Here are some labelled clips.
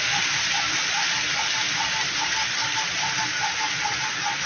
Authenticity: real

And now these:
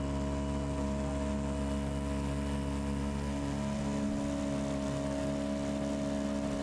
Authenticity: real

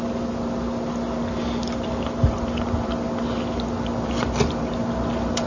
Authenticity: real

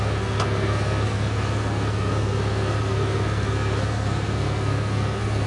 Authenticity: fake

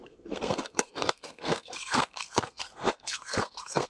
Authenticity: fake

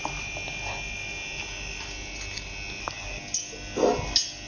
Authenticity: real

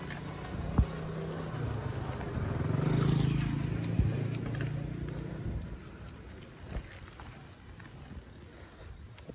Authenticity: real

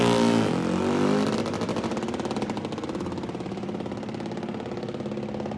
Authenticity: real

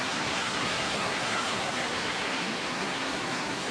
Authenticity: fake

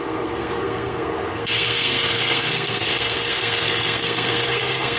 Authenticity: fake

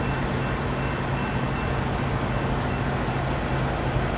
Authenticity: real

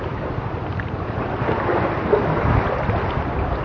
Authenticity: real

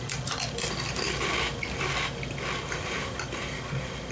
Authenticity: real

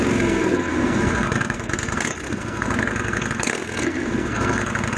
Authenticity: fake